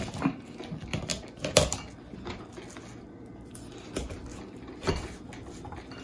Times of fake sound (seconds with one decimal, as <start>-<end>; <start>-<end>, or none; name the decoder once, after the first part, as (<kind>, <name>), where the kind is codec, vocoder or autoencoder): none